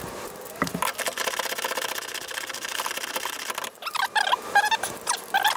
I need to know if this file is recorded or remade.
recorded